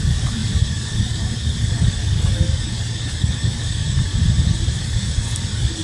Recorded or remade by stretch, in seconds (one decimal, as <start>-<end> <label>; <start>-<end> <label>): 0.0-4.1 remade; 4.1-4.8 recorded; 4.8-5.8 remade